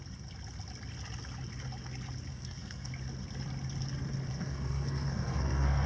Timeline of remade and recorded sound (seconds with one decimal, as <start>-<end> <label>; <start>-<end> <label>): 0.0-2.3 recorded; 2.3-2.9 remade; 2.9-4.3 recorded; 4.3-5.9 remade